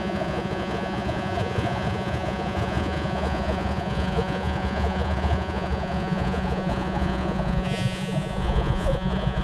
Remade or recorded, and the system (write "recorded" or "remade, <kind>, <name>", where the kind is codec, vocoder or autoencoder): remade, vocoder, Vocos